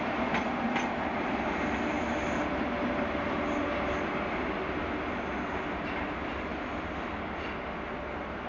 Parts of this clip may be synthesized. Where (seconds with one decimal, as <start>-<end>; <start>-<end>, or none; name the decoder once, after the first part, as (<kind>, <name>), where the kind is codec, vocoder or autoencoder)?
none